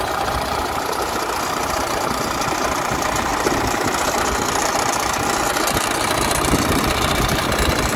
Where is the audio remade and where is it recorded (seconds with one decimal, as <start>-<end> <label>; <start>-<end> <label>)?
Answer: 0.0-3.3 remade; 3.3-6.8 recorded; 6.8-8.0 remade